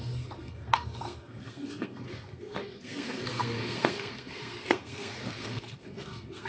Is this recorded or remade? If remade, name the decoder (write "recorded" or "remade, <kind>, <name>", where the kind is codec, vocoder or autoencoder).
remade, codec, SNAC